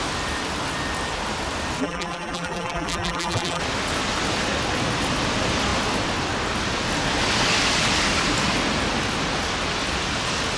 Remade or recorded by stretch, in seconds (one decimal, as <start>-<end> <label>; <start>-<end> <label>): 0.0-1.8 recorded; 1.8-3.6 remade; 3.6-10.6 recorded

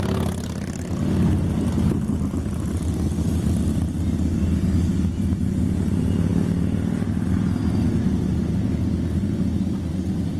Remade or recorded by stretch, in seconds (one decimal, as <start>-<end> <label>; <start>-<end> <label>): 0.0-10.4 recorded

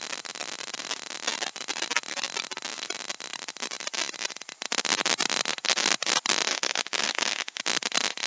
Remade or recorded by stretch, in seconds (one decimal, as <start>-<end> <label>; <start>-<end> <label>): 0.0-6.5 recorded; 6.5-7.6 remade; 7.6-8.3 recorded

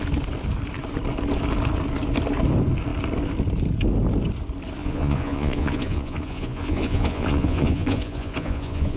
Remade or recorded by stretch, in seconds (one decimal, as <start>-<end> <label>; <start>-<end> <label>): 0.0-4.8 recorded; 4.8-9.0 remade